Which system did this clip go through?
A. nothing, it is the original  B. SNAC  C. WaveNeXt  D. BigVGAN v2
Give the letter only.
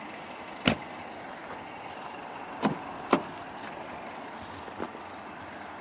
A